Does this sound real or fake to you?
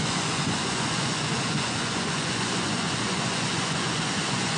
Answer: fake